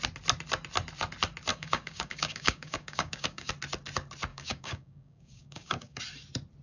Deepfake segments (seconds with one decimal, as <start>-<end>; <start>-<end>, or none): 1.5-3.5; 4.3-6.0